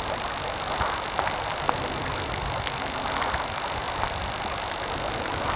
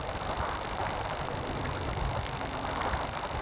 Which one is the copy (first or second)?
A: second